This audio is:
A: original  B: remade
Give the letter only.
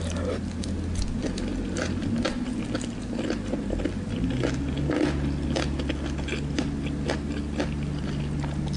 A